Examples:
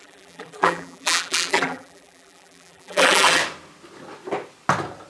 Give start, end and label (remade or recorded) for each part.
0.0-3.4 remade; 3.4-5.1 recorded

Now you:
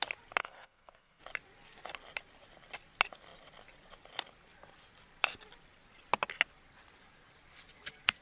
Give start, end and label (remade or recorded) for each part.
0.0-0.4 recorded; 0.4-1.2 remade; 1.2-8.2 recorded